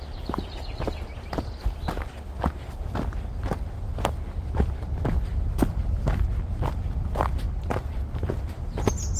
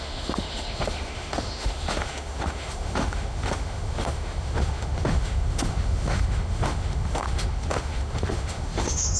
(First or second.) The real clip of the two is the first